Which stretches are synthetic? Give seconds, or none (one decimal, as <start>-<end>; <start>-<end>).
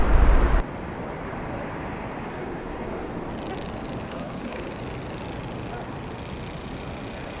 2.3-3.1; 4.1-4.7